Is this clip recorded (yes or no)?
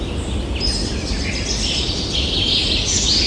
yes